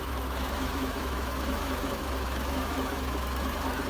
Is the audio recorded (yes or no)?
no